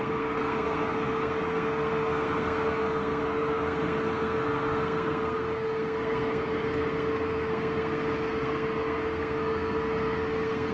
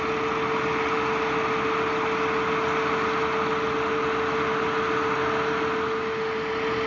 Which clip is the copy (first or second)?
first